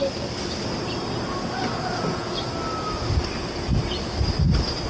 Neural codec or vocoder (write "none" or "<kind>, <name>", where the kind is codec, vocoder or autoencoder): none